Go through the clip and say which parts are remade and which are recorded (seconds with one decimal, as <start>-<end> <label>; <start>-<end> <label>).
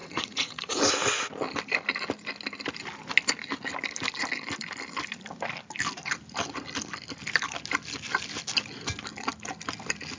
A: 0.0-0.8 remade; 0.8-10.2 recorded